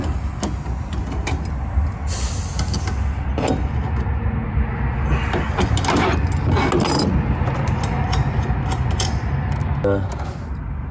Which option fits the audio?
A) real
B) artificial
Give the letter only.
A